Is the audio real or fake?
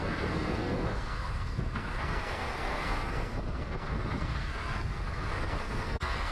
fake